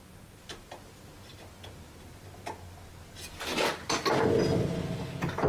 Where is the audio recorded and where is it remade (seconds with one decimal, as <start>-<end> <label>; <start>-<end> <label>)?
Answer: 0.0-5.5 recorded